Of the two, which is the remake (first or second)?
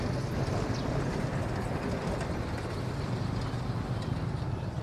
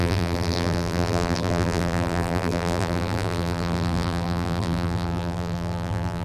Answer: second